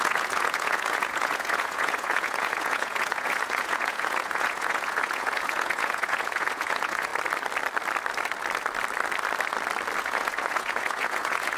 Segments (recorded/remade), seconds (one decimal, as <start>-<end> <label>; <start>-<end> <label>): 0.0-7.1 remade; 7.1-10.0 recorded; 10.0-11.6 remade